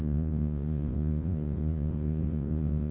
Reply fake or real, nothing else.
fake